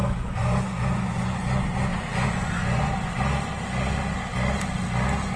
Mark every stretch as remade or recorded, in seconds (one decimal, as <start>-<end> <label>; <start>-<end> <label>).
0.0-1.4 remade; 1.4-1.9 recorded; 1.9-3.1 remade; 3.1-5.4 recorded

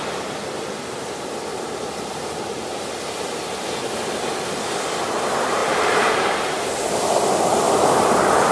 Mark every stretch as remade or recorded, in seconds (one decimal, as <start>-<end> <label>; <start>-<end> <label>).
0.0-1.5 recorded; 1.5-3.2 remade; 3.2-5.6 recorded; 5.6-7.0 remade; 7.0-8.5 recorded